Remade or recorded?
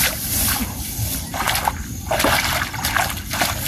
recorded